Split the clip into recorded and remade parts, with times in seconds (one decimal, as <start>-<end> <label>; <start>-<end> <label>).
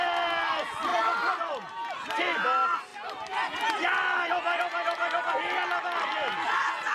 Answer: 0.0-6.9 recorded